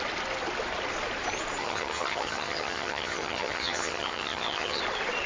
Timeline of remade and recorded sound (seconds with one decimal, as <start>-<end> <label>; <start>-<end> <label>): 0.0-1.6 recorded; 1.6-4.8 remade; 4.8-5.3 recorded